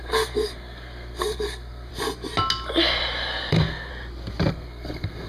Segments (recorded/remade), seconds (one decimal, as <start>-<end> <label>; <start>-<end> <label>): 0.0-1.9 remade; 1.9-3.5 recorded; 3.5-3.9 remade; 3.9-4.5 recorded; 4.5-5.3 remade